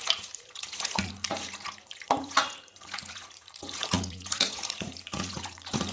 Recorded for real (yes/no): no